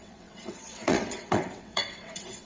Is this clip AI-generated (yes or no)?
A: yes